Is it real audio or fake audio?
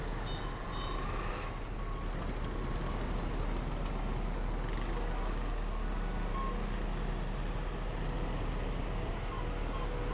real